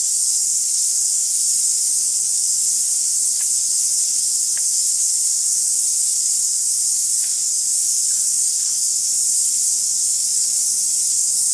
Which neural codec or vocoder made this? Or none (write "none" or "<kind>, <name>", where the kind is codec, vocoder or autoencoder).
codec, DAC